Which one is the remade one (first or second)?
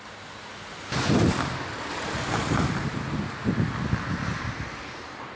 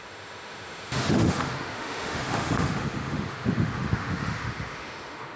second